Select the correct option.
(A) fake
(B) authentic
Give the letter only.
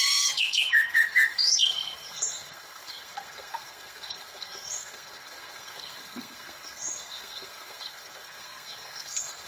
A